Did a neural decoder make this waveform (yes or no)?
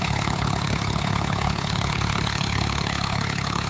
yes